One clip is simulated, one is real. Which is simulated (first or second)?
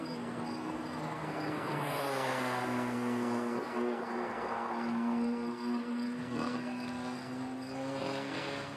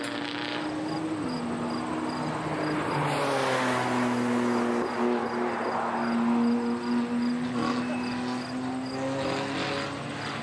first